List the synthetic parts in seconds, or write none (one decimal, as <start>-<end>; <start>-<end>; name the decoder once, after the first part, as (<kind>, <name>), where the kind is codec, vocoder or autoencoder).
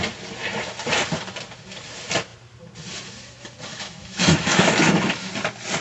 3.7-5.3 (autoencoder, DAC-VAE)